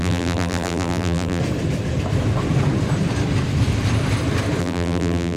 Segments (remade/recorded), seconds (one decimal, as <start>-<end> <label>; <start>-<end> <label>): 0.0-1.4 remade; 1.4-4.6 recorded; 4.6-5.4 remade